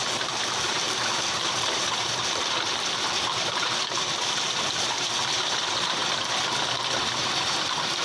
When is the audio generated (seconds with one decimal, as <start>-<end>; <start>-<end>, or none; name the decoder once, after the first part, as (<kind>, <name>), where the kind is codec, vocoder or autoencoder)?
0.0-6.0 (vocoder, BigVGAN v2); 7.0-8.0